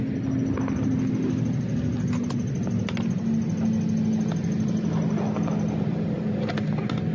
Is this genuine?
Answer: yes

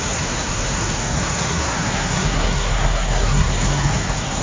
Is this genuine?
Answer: no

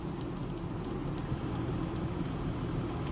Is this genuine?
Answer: yes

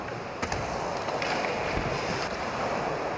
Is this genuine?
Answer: yes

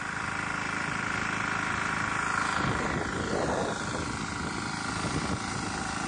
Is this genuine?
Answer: yes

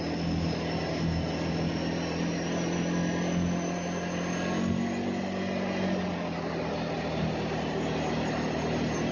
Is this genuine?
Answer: yes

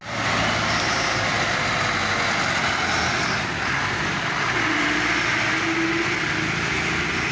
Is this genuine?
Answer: yes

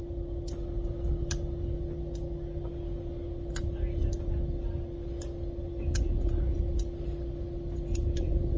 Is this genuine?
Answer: yes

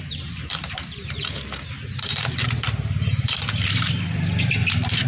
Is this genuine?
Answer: no